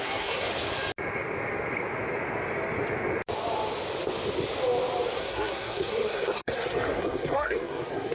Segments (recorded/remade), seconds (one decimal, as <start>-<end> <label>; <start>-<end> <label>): 0.0-0.5 remade; 0.5-5.2 recorded; 5.2-8.1 remade